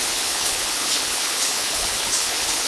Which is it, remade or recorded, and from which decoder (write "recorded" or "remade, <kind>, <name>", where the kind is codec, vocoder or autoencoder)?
remade, codec, HILCodec